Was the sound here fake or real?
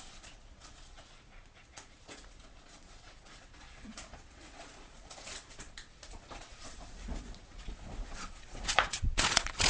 fake